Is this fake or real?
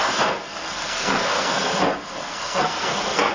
fake